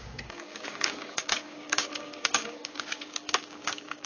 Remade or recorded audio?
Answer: remade